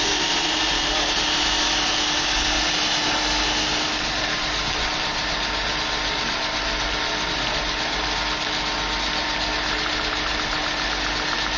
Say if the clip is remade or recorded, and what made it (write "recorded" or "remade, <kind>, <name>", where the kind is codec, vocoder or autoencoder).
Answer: recorded